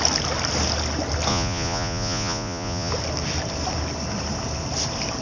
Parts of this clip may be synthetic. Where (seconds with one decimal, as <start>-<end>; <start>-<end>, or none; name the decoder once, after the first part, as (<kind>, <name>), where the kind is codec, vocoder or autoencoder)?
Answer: 1.3-2.9 (vocoder, Vocos)